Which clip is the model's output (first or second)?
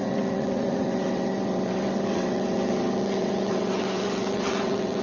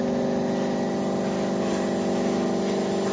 first